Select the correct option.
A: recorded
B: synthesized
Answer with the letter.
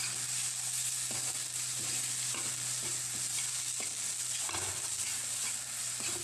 A